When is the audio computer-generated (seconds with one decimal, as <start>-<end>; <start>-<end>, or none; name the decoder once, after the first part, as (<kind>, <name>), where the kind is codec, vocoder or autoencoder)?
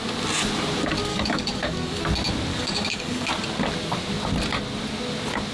1.1-2.0 (codec, DAC); 2.5-3.3